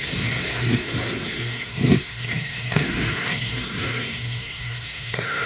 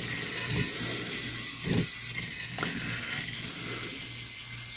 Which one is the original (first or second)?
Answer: second